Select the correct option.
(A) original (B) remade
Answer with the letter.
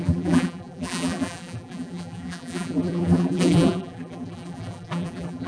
B